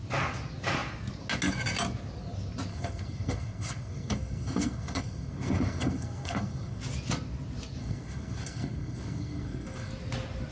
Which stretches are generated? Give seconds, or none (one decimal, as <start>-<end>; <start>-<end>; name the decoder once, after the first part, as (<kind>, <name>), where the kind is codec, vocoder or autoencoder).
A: 2.7-6.8 (codec, SNAC); 7.8-9.9